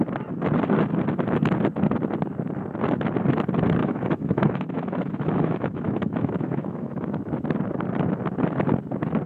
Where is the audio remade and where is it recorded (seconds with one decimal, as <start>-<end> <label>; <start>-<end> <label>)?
0.0-3.8 recorded; 3.8-7.3 remade; 7.3-9.3 recorded